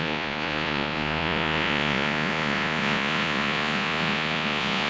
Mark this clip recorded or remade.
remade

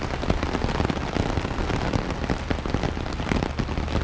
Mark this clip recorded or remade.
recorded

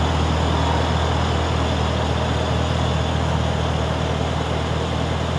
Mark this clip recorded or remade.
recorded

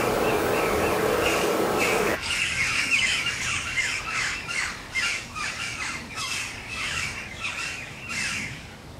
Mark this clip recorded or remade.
remade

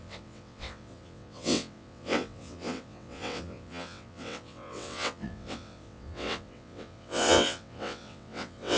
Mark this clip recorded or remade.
remade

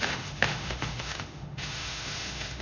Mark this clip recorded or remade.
remade